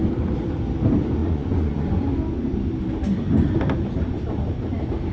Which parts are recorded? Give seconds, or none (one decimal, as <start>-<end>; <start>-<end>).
0.0-1.2; 2.0-5.1